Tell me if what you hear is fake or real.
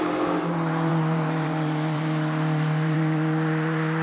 fake